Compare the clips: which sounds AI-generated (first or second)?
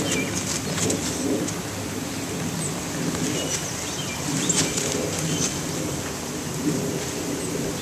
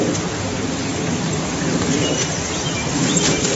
second